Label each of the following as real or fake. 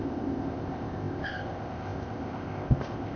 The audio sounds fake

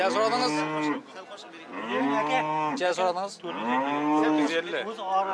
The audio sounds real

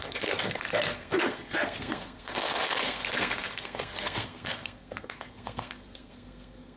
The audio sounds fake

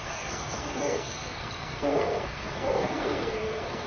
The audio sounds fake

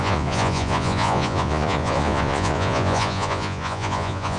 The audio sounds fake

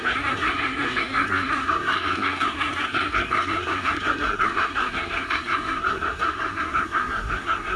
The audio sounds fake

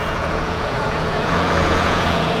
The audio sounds fake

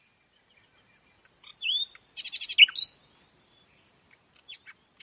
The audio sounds real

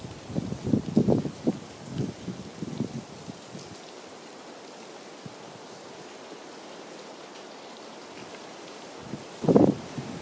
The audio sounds real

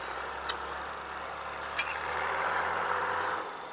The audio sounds real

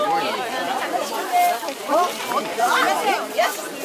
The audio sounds real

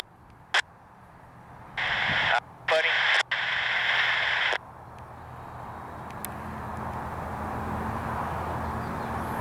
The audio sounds real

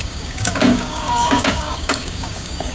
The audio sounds fake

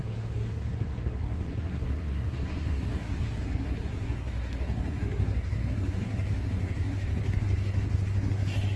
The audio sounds fake